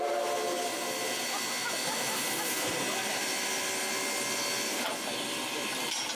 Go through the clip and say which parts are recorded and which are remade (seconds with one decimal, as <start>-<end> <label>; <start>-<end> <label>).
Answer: 0.0-6.2 recorded